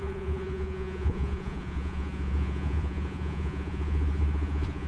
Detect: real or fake fake